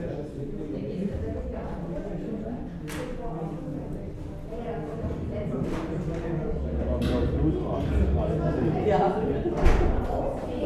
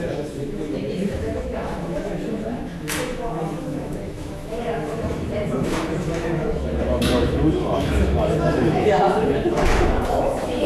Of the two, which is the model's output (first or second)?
second